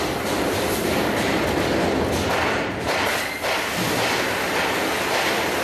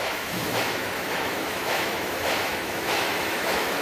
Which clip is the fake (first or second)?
second